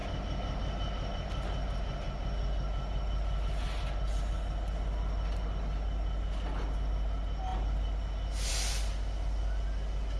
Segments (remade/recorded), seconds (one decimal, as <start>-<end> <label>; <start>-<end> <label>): 0.0-10.2 recorded